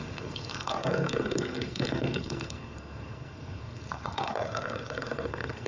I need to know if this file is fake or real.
fake